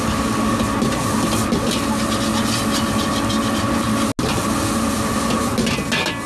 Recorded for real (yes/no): yes